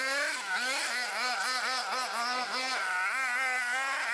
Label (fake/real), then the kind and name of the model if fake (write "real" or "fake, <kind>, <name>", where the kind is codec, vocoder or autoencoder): real